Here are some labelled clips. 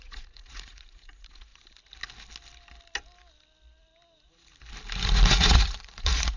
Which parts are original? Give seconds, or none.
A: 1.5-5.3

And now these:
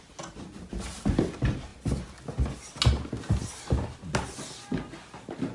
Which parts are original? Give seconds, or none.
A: 0.0-5.5

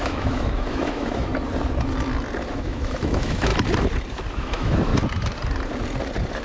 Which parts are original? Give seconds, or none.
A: 1.3-2.5; 3.5-4.3; 4.9-6.4

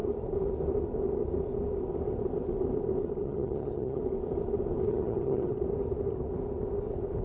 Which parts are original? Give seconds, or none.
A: 0.0-3.2; 4.0-4.9; 5.6-7.2

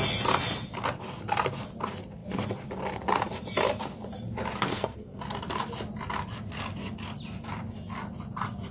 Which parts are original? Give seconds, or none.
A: 0.0-4.7; 5.2-8.7

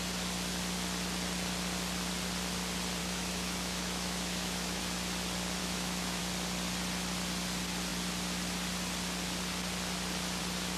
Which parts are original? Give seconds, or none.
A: 0.0-3.0; 4.8-5.6; 6.2-10.8